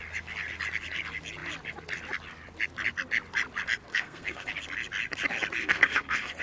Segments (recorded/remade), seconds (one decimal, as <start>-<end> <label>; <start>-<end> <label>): 0.0-3.9 recorded; 3.9-4.5 remade; 4.5-5.6 recorded; 5.6-6.4 remade